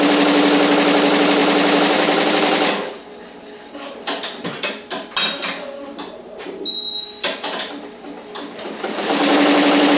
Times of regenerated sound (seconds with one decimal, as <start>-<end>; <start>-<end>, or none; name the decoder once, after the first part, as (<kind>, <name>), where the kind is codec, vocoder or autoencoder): none